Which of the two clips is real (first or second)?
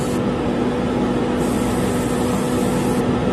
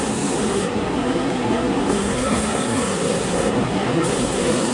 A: first